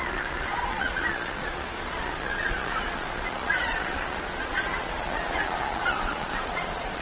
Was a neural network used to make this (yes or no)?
yes